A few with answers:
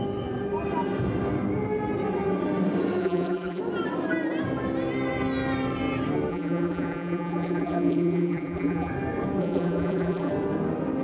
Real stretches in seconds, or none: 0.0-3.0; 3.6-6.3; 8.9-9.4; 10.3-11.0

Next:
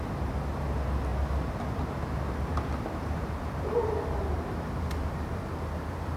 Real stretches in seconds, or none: 0.0-2.5; 5.5-6.2

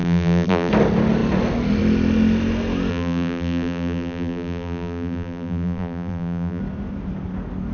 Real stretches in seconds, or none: 0.7-2.9; 6.6-7.7

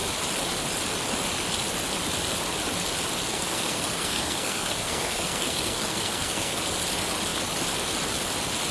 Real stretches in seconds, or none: 0.0-3.3; 6.6-8.7

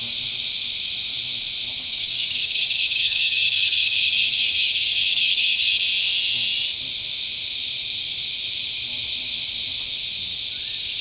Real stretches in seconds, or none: 0.0-1.7; 5.7-11.0

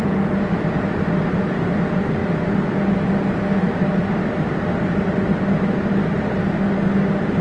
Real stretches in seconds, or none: 0.0-7.4